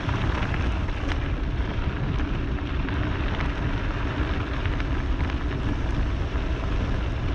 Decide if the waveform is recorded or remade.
recorded